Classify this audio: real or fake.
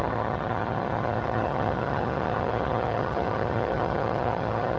fake